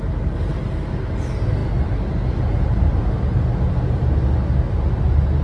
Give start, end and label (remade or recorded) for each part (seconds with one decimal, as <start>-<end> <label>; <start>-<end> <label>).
0.0-1.6 recorded; 1.6-3.1 remade; 3.1-5.4 recorded